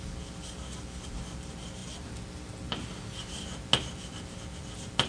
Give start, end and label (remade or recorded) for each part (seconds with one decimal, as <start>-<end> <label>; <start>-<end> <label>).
0.0-5.1 recorded